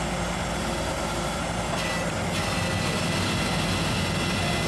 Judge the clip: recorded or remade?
recorded